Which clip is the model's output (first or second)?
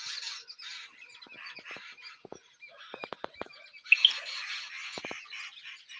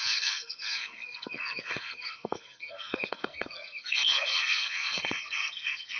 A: second